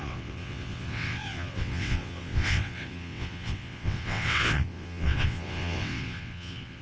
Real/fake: fake